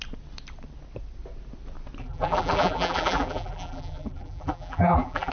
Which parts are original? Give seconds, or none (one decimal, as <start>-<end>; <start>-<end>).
0.0-2.0